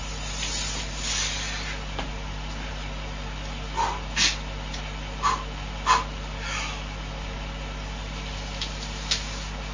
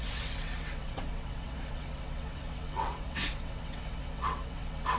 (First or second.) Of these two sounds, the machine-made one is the second